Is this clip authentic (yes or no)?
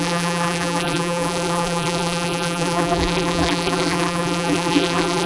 no